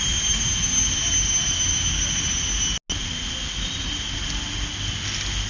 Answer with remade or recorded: recorded